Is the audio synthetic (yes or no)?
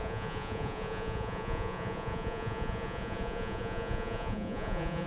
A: yes